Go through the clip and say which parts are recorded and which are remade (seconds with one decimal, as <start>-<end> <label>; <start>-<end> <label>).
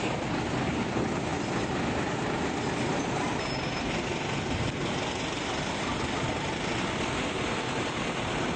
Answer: 0.0-8.6 recorded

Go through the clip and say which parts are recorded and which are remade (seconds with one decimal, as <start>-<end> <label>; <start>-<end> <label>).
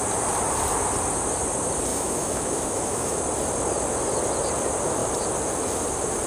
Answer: 0.0-1.9 recorded; 1.9-3.2 remade; 3.2-6.3 recorded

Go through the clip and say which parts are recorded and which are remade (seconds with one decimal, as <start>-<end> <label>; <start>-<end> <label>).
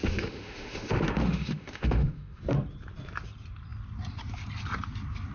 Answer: 0.0-2.4 remade; 2.4-5.3 recorded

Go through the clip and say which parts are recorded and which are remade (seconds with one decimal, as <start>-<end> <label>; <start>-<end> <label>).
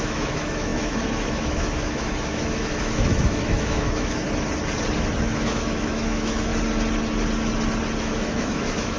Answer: 0.0-4.2 remade; 4.2-5.2 recorded; 5.2-6.5 remade; 6.5-8.0 recorded; 8.0-9.0 remade